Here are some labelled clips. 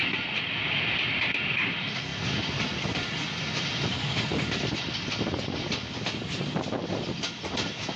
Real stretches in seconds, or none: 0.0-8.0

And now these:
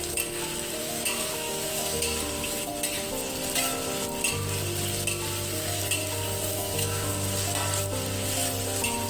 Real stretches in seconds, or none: 0.0-0.8; 2.0-6.5; 7.1-9.1

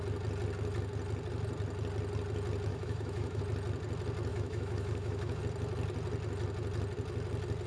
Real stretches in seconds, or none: 0.0-2.7; 3.4-4.3; 5.4-7.7

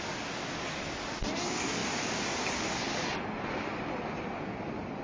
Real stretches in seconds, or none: 0.0-1.8; 2.7-5.0

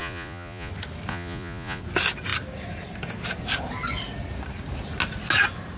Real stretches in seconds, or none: 0.7-1.1; 1.8-5.8

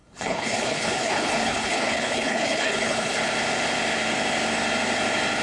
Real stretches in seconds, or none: 3.2-5.4